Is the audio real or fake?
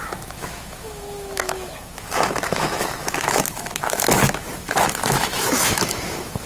fake